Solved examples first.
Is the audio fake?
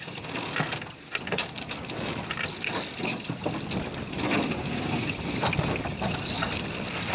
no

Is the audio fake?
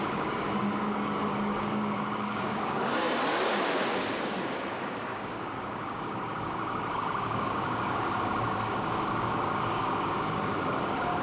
yes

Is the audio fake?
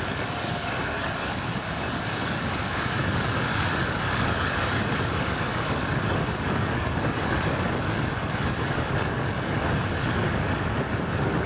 yes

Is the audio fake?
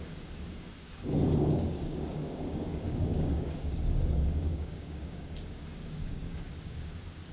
yes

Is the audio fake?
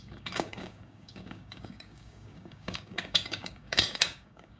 yes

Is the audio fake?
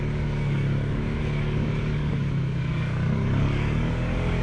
yes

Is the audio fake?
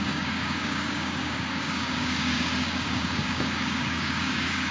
yes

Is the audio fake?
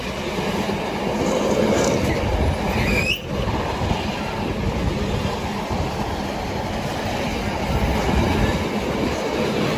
no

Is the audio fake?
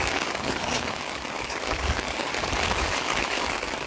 yes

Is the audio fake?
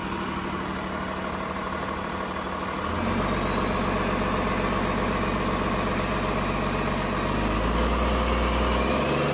no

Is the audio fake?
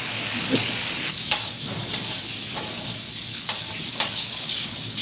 yes